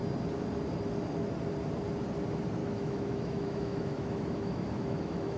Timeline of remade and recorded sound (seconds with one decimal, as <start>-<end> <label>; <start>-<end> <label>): 0.0-2.6 recorded; 2.6-5.4 remade